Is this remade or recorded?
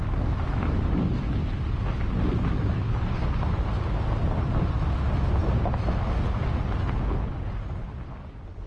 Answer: recorded